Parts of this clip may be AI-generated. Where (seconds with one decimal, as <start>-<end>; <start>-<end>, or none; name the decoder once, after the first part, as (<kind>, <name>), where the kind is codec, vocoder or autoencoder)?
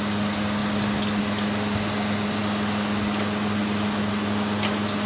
none